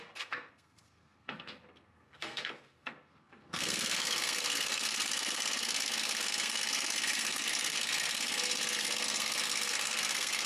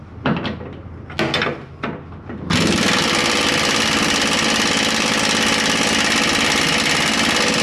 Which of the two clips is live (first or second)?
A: second